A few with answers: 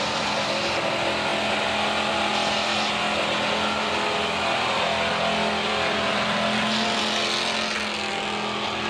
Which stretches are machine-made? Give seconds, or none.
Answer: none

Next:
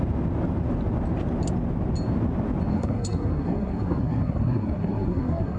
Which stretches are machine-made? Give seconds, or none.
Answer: 2.7-5.6 (codec, SNAC)

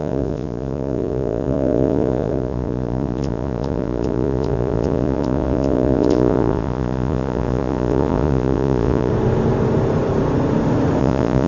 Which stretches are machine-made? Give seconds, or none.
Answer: 0.0-9.1 (vocoder, Vocos); 11.0-11.5